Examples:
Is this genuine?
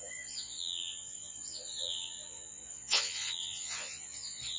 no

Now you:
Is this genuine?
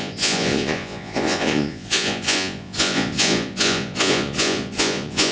no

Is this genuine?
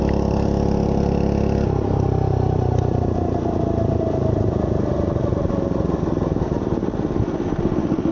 yes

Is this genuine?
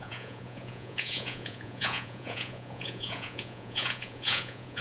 no